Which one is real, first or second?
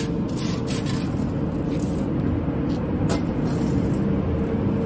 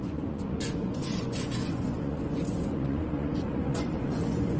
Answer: first